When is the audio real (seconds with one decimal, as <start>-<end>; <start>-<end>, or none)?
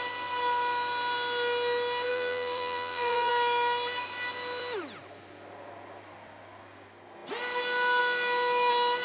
0.0-2.1; 3.3-9.0